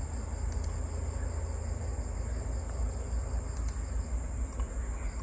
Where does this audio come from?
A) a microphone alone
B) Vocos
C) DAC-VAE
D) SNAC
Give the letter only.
A